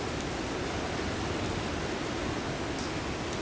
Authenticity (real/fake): real